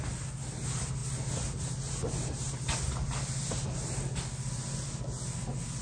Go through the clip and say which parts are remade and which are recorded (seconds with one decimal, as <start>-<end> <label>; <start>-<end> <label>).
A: 0.0-5.8 recorded